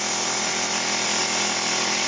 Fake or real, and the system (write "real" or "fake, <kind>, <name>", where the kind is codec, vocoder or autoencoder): real